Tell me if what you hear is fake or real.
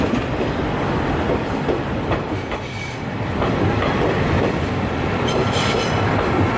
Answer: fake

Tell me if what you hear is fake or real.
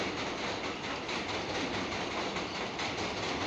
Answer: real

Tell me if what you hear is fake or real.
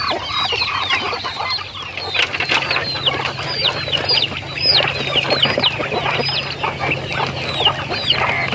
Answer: real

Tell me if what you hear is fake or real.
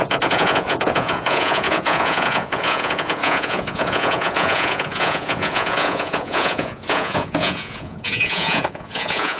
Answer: fake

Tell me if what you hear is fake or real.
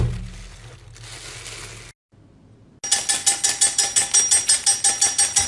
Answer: real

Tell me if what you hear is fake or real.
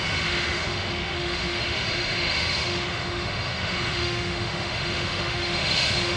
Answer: fake